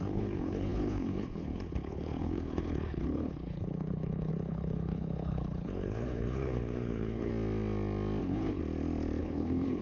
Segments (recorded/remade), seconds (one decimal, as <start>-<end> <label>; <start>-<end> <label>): 0.0-7.3 remade; 7.3-8.2 recorded; 8.2-8.6 remade; 8.6-9.2 recorded; 9.2-9.8 remade